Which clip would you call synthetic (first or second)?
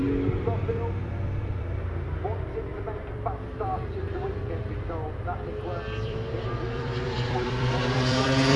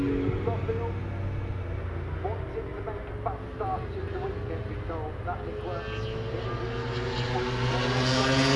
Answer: first